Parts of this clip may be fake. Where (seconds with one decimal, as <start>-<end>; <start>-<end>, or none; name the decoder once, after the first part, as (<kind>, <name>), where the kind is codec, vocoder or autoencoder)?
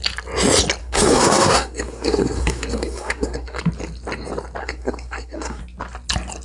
0.8-3.6 (codec, SNAC); 4.6-5.6